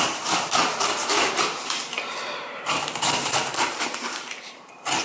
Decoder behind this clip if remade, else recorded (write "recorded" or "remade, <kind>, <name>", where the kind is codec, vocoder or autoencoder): remade, vocoder, BigVGAN v2